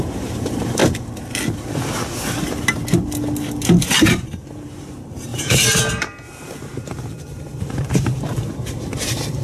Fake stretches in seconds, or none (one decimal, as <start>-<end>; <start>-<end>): 0.0-0.8; 3.8-9.4